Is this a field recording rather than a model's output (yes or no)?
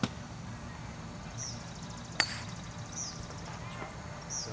yes